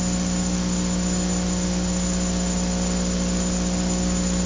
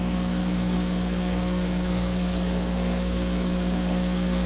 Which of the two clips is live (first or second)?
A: first